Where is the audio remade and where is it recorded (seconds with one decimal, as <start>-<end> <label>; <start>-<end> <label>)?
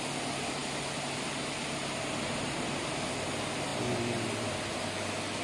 0.0-5.4 recorded